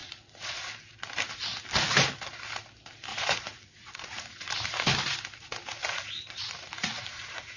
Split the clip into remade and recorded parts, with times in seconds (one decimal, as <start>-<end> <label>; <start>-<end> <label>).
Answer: 0.0-0.7 remade; 0.7-3.1 recorded; 3.1-4.5 remade; 4.5-5.7 recorded; 5.7-7.6 remade